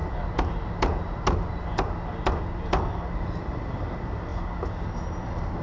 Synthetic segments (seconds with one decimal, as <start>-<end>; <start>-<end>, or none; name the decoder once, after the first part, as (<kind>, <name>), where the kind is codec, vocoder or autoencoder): 3.4-4.3 (vocoder, BigVGAN v2)